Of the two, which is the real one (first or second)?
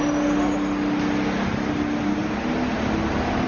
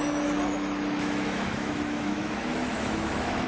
first